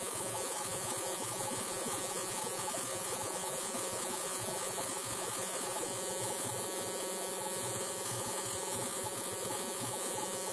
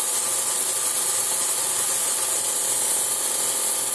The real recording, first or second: second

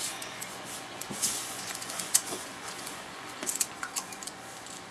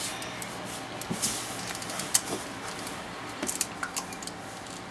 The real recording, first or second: second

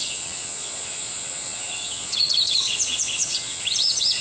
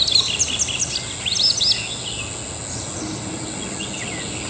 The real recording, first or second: second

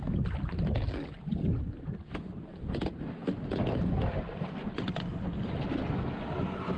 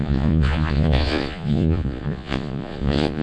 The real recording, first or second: first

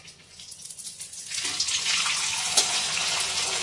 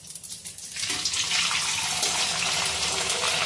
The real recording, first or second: second